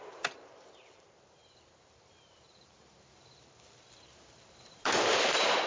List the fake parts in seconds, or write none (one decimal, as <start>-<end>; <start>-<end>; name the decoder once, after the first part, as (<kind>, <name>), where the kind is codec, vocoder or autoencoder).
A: 0.0-5.7 (vocoder, BigVGAN v2)